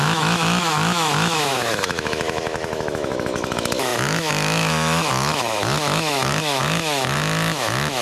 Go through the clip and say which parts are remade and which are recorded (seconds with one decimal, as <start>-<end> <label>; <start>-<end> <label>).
0.0-8.0 remade